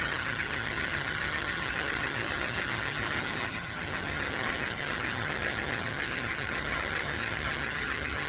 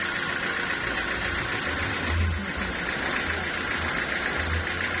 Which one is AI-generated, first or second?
first